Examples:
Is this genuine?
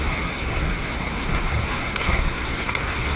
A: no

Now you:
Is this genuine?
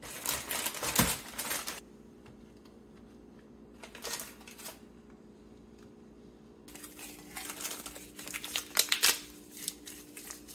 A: yes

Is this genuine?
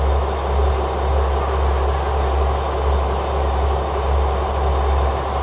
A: yes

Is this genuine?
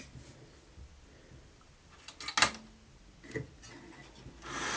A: yes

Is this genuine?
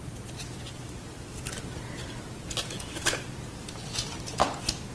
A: yes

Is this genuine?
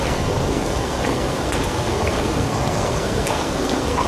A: no